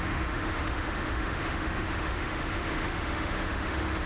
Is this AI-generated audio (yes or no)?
yes